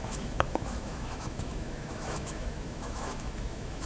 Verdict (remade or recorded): remade